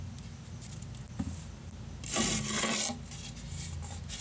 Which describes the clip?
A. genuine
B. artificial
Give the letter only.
A